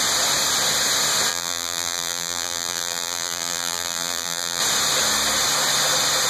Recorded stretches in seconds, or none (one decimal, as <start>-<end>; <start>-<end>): 0.0-1.3; 4.6-6.3